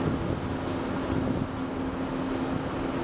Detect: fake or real real